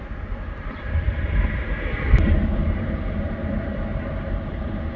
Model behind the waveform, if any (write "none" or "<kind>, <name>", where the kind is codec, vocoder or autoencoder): vocoder, BigVGAN v2